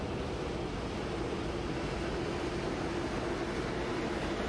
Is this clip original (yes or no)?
yes